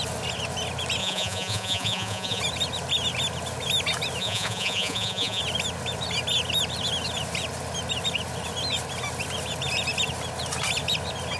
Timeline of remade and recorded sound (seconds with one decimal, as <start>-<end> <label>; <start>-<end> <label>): 0.0-1.0 recorded; 1.0-2.4 remade; 2.4-4.2 recorded; 4.2-5.4 remade; 5.4-11.4 recorded